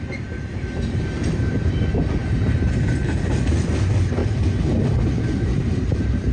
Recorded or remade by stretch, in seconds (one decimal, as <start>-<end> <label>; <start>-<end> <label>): 0.0-4.2 remade; 4.2-4.9 recorded; 4.9-6.3 remade